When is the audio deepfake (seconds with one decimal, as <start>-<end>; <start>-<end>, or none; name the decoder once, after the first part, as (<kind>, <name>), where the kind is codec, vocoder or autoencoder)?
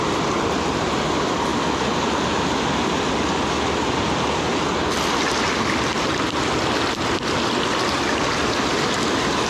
none